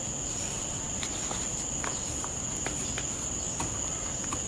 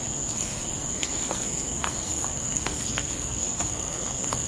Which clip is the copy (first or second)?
second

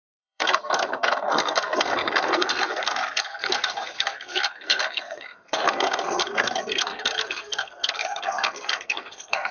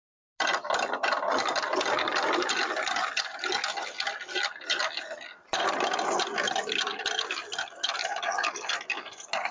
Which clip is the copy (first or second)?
first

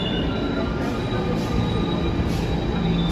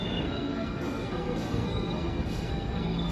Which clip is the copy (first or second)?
second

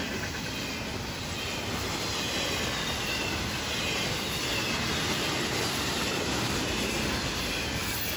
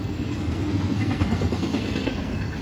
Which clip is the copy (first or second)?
second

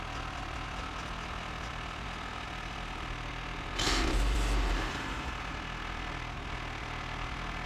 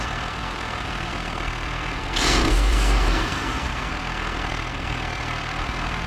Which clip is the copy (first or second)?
second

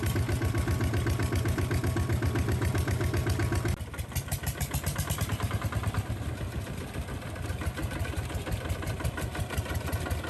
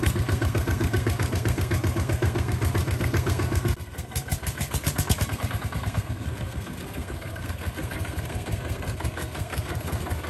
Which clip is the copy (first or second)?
second